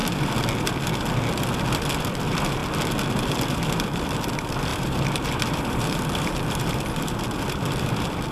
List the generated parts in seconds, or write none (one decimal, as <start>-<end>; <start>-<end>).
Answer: 2.0-2.6; 3.1-8.3

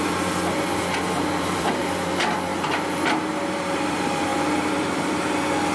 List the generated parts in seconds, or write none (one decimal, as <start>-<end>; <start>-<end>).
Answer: 0.0-2.5; 3.5-4.3

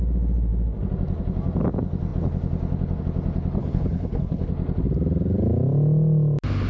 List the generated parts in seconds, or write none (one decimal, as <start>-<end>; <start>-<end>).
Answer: 3.6-4.5

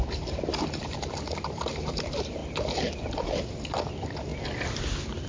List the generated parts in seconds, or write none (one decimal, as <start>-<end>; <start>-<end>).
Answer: 0.8-2.4; 3.9-4.3

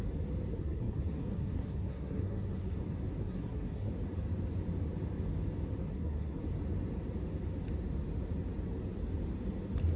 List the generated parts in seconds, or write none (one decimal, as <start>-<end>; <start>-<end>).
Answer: 0.5-2.8; 3.2-3.9; 5.9-6.4

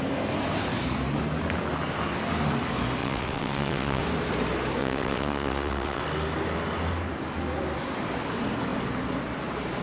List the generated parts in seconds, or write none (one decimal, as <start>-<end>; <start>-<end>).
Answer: 3.0-4.0; 4.8-6.0

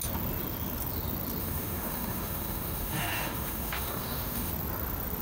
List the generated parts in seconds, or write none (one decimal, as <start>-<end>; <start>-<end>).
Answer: 1.4-4.5

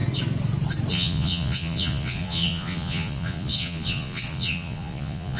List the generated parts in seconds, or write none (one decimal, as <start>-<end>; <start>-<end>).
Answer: 0.9-5.4